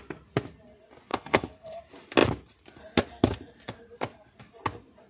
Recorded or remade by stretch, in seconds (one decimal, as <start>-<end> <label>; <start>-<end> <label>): 0.0-1.1 recorded; 1.1-1.8 remade; 1.8-5.1 recorded